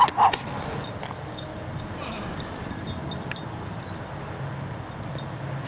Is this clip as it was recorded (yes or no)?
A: yes